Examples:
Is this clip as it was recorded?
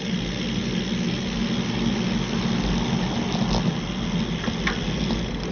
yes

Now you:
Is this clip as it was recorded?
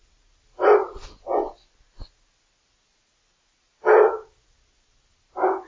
yes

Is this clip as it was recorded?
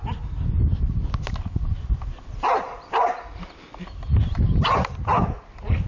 yes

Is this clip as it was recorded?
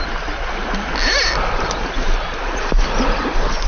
yes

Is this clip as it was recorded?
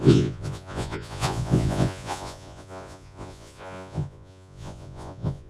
no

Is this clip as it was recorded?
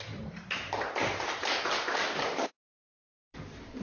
no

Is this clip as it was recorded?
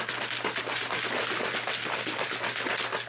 yes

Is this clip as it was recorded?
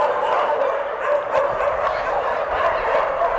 yes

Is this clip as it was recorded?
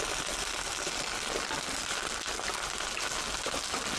yes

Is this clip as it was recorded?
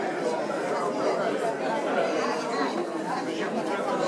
yes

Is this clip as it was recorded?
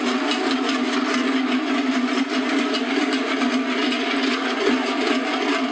yes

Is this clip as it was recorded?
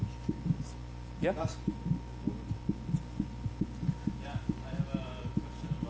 yes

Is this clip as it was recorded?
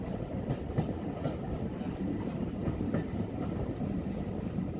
yes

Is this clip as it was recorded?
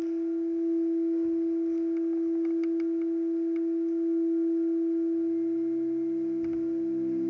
yes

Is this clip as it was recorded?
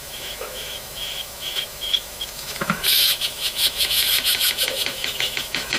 no